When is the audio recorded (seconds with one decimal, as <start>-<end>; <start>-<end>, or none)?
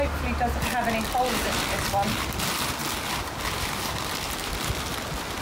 0.0-5.4